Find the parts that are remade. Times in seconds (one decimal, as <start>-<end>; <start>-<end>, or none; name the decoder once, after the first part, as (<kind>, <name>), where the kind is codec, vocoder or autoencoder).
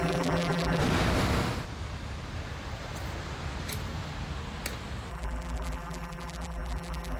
0.0-0.8 (vocoder, BigVGAN v2); 5.1-7.2